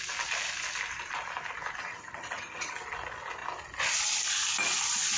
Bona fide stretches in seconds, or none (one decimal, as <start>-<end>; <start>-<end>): 0.0-1.8; 2.7-5.2